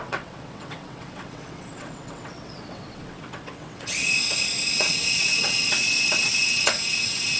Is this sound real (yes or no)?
no